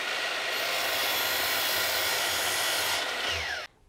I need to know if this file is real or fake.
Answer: real